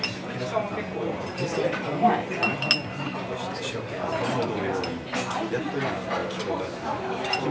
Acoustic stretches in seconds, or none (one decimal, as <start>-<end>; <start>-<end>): 0.0-7.5